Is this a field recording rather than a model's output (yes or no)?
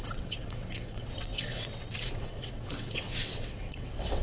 no